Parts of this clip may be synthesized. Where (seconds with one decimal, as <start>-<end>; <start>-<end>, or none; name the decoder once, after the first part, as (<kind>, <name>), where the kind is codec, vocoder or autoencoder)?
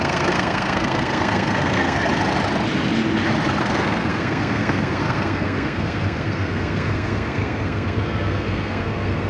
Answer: 0.0-2.0 (codec, SNAC); 3.6-9.3